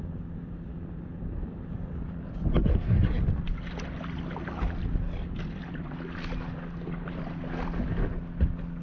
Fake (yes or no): no